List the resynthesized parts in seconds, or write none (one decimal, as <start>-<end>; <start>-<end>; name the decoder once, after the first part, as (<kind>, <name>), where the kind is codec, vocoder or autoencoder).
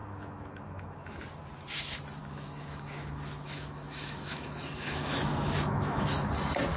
0.0-1.2 (autoencoder, DAC-VAE); 2.2-6.3